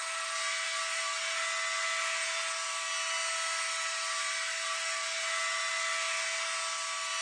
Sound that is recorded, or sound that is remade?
recorded